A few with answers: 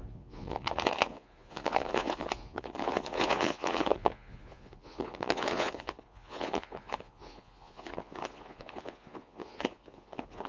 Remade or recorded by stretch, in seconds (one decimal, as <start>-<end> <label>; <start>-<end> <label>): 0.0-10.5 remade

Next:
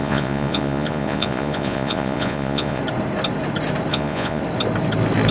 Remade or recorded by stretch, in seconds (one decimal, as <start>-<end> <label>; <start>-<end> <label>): 0.0-2.8 remade; 2.8-3.9 recorded; 3.9-4.4 remade; 4.4-5.3 recorded

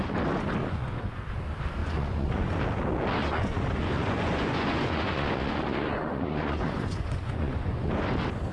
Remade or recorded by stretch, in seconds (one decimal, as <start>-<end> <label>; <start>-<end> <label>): 0.0-0.6 recorded; 0.6-1.2 remade; 1.2-1.8 recorded; 1.8-2.5 remade; 2.5-3.2 recorded; 3.2-7.9 remade; 7.9-8.5 recorded